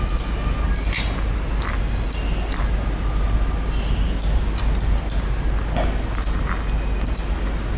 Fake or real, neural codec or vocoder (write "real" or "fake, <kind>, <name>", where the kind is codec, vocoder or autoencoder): real